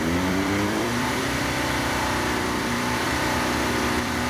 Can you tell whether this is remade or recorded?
remade